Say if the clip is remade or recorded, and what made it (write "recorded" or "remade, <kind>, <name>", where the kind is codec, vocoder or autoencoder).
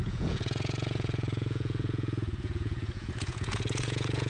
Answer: remade, vocoder, Vocos